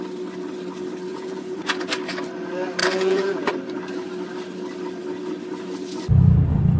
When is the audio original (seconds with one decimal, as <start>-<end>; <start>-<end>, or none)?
0.0-1.1; 2.0-2.8; 3.5-6.8